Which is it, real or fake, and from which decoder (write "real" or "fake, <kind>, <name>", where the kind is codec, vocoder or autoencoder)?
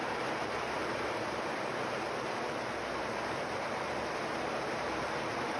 fake, vocoder, BigVGAN v2